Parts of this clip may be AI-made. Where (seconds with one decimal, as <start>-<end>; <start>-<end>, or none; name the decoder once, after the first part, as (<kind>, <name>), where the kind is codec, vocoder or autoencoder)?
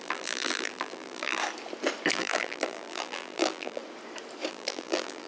0.0-1.4 (vocoder, BigVGAN v2); 2.1-3.8; 4.5-5.3